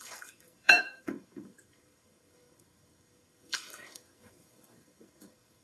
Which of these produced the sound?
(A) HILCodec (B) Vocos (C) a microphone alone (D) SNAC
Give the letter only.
D